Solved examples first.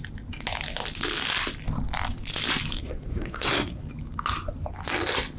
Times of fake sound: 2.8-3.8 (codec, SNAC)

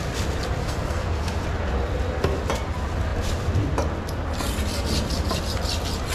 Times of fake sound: 0.6-1.4 (codec, SNAC)

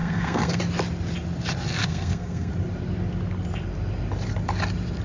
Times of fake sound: 0.0-0.6 (codec, SNAC); 1.8-2.5

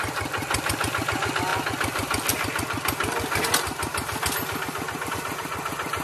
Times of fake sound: none

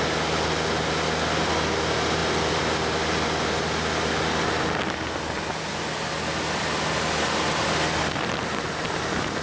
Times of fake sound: none

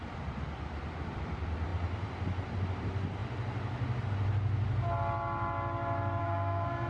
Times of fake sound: 6.2-6.9 (codec, SNAC)

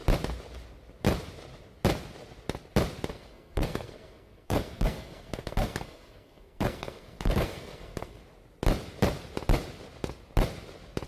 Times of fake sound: 3.1-8.2 (codec, SNAC)